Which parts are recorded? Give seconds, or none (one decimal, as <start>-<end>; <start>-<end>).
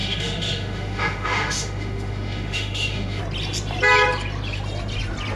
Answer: 3.2-5.4